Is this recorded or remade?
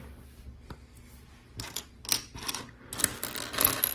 recorded